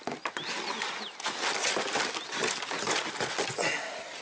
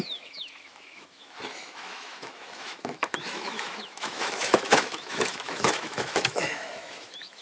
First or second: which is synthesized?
second